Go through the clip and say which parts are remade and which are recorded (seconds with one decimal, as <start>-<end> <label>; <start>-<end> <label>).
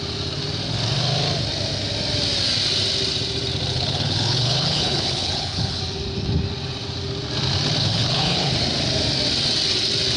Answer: 0.0-3.7 recorded; 3.7-5.8 remade; 5.8-7.8 recorded; 7.8-8.5 remade; 8.5-10.2 recorded